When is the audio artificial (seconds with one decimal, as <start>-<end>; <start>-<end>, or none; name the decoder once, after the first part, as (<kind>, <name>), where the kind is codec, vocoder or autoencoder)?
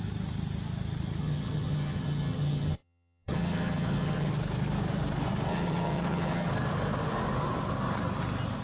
1.2-4.3 (vocoder, HiFi-GAN); 5.5-6.5